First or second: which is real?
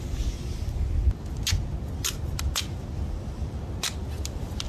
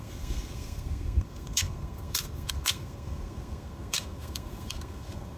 first